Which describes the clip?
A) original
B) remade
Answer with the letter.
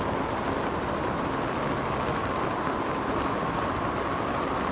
A